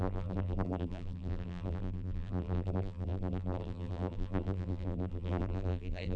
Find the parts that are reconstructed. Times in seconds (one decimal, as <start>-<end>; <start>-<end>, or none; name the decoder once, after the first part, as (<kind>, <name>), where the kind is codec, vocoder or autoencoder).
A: 0.0-6.2 (vocoder, BigVGAN v2)